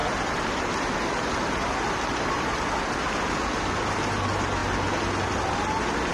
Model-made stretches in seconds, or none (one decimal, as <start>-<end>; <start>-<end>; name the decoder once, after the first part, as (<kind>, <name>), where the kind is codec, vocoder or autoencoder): none